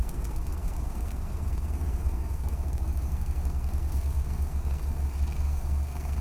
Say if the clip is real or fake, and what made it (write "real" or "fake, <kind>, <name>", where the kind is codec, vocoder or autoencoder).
fake, codec, SNAC